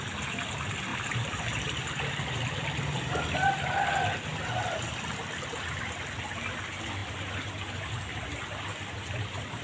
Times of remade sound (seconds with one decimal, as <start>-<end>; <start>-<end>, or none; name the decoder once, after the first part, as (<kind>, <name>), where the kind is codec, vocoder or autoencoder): none